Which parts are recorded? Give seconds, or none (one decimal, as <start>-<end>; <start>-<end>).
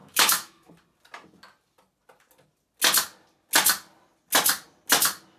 0.7-5.4